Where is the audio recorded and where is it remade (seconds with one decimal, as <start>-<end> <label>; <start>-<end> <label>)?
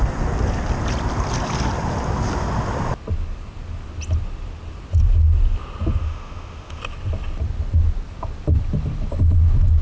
0.0-6.0 recorded; 6.0-6.8 remade; 6.8-9.8 recorded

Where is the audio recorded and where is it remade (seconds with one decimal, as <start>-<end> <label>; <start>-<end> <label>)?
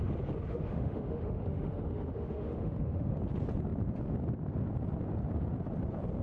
0.0-0.5 recorded; 0.5-3.2 remade; 3.2-6.2 recorded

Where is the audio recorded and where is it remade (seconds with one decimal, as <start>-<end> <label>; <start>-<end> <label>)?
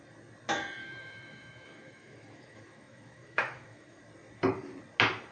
0.0-0.8 recorded; 0.8-4.0 remade; 4.0-5.3 recorded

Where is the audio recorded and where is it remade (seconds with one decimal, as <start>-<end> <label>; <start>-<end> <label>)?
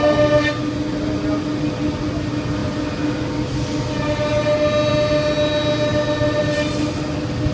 0.0-7.5 recorded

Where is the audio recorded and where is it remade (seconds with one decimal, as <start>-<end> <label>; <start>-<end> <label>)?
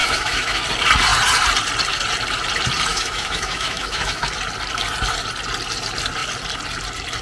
0.0-0.6 remade; 0.6-2.9 recorded; 2.9-4.3 remade; 4.3-7.2 recorded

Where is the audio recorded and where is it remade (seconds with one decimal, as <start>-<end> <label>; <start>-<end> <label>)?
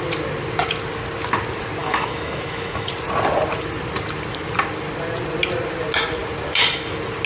0.0-1.8 recorded; 1.8-2.9 remade; 2.9-7.3 recorded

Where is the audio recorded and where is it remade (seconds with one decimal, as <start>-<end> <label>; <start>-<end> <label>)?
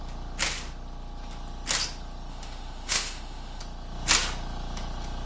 0.0-2.3 recorded; 2.3-3.6 remade; 3.6-5.3 recorded